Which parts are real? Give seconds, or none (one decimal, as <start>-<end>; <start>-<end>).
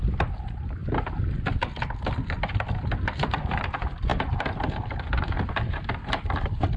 0.0-0.8; 1.5-4.1; 5.5-6.8